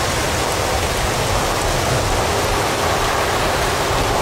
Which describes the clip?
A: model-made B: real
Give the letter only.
B